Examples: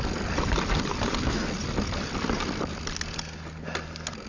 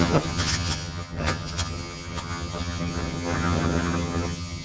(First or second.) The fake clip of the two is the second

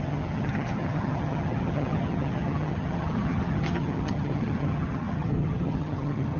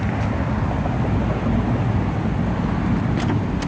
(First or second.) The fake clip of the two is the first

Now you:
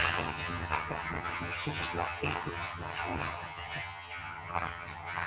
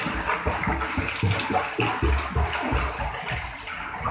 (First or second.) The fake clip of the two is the first